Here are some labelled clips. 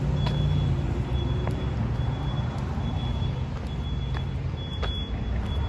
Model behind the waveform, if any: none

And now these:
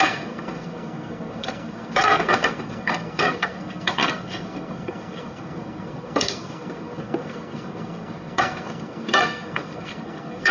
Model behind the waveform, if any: codec, SNAC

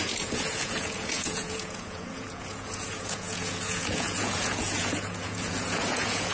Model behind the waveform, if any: vocoder, Vocos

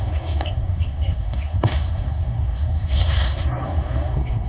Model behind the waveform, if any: codec, SNAC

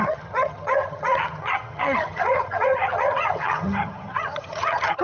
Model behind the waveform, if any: vocoder, HiFi-GAN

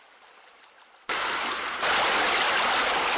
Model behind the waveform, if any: none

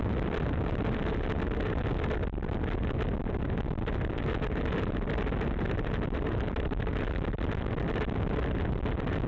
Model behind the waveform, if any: none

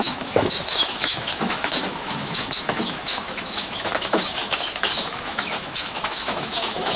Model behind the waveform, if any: autoencoder, DAC-VAE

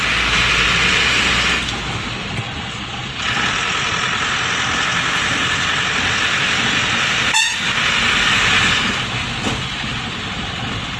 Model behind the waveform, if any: none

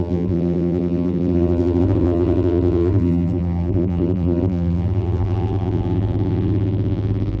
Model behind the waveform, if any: vocoder, BigVGAN v2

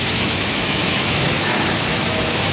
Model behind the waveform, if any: autoencoder, DAC-VAE